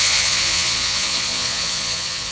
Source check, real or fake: fake